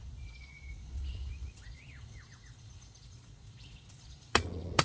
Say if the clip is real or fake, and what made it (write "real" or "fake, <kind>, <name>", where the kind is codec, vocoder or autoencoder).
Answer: fake, vocoder, Vocos